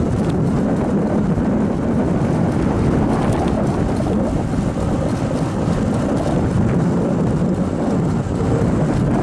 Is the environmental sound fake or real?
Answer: real